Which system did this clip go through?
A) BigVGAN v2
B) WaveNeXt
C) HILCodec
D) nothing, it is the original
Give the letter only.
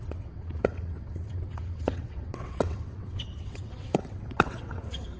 B